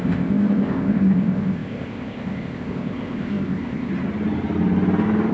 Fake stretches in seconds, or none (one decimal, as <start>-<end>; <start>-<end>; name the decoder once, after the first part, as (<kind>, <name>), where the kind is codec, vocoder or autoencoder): 0.0-3.9 (codec, ZipCodec)